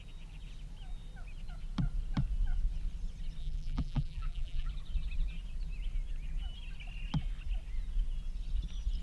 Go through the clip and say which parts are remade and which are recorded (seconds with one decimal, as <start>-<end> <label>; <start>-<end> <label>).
0.0-3.4 recorded; 3.4-4.7 remade; 4.7-9.0 recorded